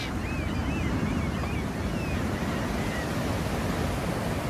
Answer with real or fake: real